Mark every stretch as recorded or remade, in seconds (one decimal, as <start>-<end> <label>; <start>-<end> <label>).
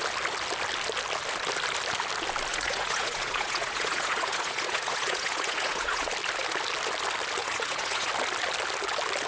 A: 0.0-2.5 recorded; 2.5-6.1 remade; 6.1-7.4 recorded; 7.4-8.1 remade; 8.1-9.3 recorded